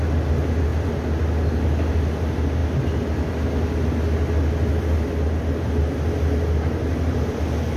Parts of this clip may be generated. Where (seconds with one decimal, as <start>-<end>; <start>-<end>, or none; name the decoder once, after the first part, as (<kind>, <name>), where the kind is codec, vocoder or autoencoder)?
none